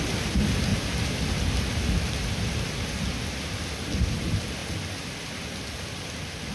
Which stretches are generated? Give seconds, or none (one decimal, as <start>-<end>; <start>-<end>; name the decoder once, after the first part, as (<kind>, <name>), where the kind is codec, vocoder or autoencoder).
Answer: 0.0-0.7 (vocoder, BigVGAN v2); 4.1-6.5